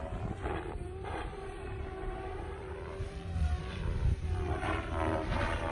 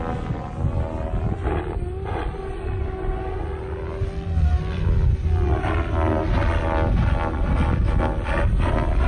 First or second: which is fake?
first